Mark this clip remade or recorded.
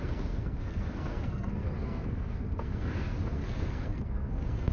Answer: remade